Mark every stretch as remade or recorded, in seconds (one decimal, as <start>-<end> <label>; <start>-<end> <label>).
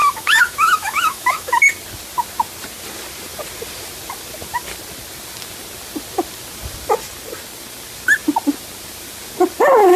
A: 0.0-1.6 remade; 1.6-10.0 recorded